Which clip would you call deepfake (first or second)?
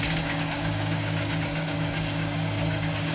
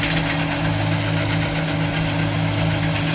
first